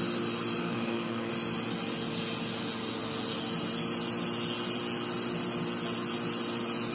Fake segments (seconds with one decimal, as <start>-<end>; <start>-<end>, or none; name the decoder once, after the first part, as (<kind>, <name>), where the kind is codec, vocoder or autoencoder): 0.6-1.3 (codec, SNAC)